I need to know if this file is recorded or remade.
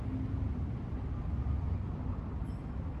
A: recorded